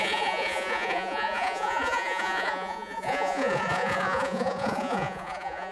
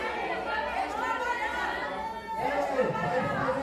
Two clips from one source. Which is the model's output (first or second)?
first